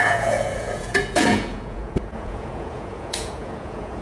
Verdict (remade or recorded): remade